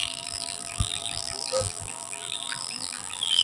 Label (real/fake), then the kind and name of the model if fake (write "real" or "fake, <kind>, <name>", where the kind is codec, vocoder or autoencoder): fake, vocoder, BigVGAN v2